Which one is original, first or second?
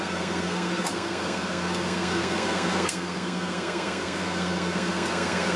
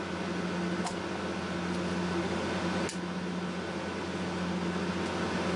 second